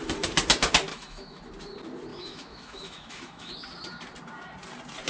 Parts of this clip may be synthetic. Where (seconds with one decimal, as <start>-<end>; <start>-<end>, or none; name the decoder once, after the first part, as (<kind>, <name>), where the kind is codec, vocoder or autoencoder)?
0.9-1.4 (autoencoder, DAC-VAE); 2.1-3.5